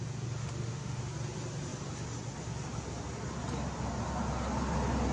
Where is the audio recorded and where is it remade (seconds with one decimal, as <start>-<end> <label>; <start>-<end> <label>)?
0.0-0.4 recorded; 0.4-1.0 remade; 1.0-5.1 recorded